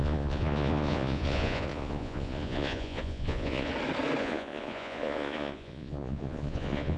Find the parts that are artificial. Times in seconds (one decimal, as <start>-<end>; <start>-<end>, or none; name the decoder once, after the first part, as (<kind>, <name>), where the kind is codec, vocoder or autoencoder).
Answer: 0.0-3.7 (vocoder, Vocos); 4.2-7.0